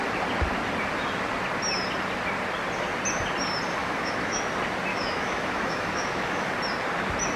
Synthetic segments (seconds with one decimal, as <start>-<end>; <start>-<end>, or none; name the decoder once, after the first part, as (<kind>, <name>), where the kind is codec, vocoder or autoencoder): 3.8-4.4 (autoencoder, DAC-VAE); 4.9-6.5